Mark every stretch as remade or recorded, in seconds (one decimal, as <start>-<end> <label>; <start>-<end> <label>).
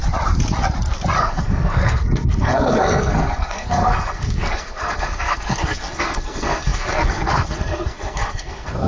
0.0-1.2 recorded; 1.2-8.9 remade